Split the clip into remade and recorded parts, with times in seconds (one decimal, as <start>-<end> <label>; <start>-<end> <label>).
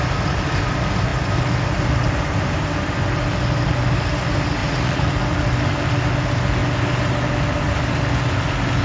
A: 0.0-4.6 recorded; 4.6-5.1 remade; 5.1-8.8 recorded